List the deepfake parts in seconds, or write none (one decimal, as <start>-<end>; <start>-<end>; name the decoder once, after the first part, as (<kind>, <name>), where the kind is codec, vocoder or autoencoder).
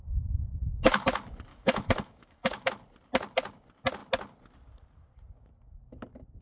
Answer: 1.5-2.7 (autoencoder, DAC-VAE)